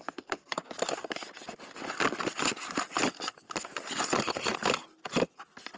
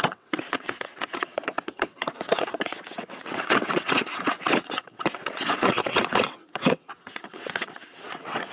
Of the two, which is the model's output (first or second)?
second